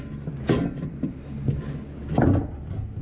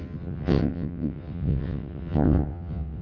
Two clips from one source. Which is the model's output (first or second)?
second